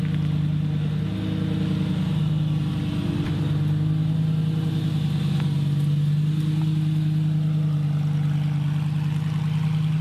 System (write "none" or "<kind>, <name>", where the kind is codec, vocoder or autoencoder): none